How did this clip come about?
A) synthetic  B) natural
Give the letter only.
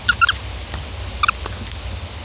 B